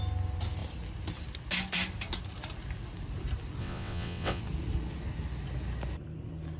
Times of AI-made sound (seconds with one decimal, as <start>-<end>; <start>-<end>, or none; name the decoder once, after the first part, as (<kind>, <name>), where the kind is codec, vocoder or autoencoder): 3.6-4.4 (vocoder, WaveNeXt)